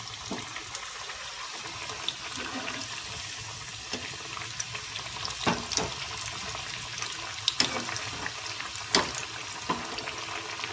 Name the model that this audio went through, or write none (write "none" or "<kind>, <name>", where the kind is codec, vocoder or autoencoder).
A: none